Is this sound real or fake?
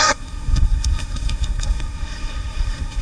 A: fake